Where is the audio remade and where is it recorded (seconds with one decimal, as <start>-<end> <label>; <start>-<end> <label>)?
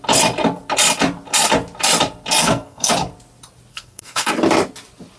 0.0-2.4 recorded; 2.4-2.9 remade; 2.9-3.7 recorded; 3.7-4.3 remade; 4.3-5.2 recorded